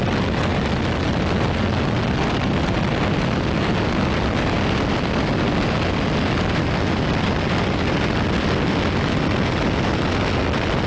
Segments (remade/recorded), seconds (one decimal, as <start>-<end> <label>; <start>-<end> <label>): 0.0-10.9 recorded